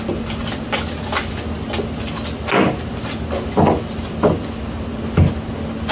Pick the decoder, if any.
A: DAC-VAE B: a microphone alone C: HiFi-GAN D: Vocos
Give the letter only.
B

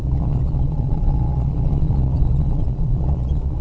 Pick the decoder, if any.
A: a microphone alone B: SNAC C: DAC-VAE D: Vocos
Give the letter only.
D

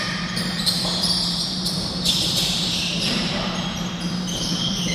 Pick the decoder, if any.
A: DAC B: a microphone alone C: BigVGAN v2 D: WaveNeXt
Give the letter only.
C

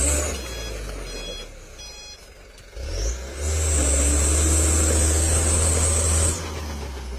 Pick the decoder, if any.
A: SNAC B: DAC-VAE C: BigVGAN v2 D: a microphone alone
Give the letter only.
D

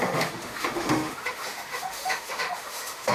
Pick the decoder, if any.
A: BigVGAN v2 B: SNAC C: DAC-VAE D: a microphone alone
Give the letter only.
C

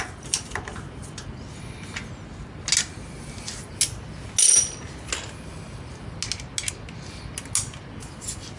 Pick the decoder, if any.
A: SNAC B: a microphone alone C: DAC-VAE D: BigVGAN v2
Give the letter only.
B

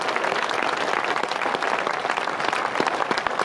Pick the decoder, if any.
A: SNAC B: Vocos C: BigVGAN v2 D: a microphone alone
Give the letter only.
D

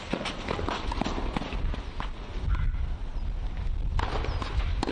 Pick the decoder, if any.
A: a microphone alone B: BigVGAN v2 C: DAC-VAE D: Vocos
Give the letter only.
A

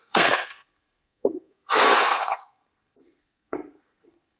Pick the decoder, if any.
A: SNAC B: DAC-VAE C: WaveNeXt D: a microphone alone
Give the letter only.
A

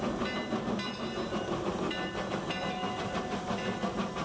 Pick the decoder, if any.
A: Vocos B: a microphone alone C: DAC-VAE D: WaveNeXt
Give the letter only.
B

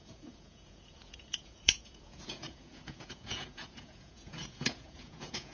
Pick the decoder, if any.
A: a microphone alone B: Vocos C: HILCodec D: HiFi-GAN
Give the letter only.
B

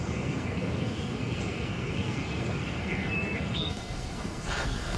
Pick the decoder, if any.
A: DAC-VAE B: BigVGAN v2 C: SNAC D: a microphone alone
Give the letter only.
C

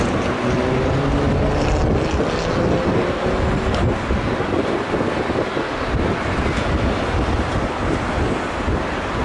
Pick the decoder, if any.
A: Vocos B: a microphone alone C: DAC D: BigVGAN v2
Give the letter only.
B